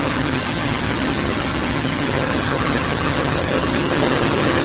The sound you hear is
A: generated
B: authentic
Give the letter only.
A